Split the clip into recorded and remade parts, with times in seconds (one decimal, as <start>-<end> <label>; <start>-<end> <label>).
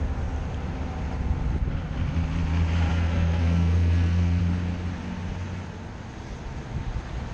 0.0-2.9 recorded; 2.9-4.4 remade; 4.4-7.3 recorded